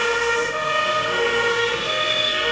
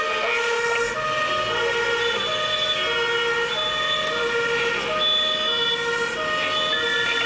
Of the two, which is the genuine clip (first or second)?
second